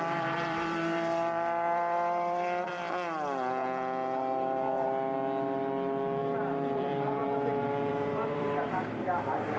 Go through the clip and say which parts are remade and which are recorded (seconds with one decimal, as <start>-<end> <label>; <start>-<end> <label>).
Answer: 0.0-2.7 remade; 2.7-6.2 recorded; 6.2-7.2 remade; 7.2-7.9 recorded; 7.9-9.6 remade